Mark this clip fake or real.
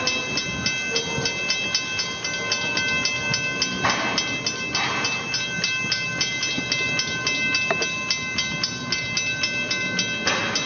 real